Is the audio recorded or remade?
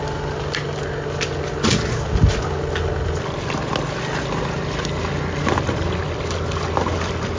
recorded